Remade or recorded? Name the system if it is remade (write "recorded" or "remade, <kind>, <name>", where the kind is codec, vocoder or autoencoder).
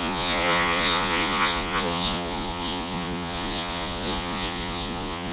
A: remade, vocoder, Vocos